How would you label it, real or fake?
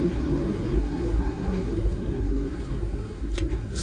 fake